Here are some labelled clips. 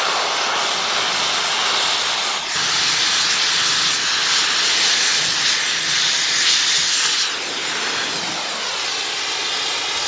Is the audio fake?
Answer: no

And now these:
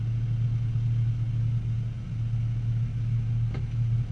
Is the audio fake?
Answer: no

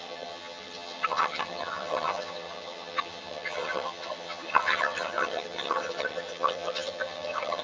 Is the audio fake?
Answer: yes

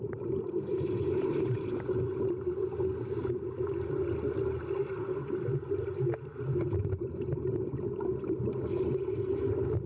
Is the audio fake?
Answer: no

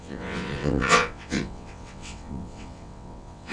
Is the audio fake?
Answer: yes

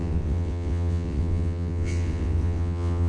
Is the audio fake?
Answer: yes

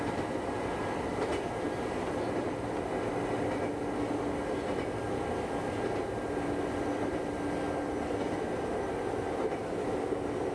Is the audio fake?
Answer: no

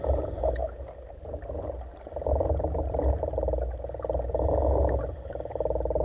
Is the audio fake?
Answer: no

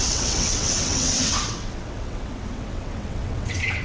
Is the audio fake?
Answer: yes